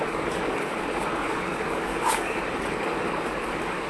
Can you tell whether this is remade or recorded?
remade